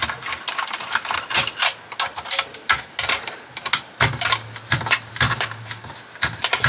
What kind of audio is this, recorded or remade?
recorded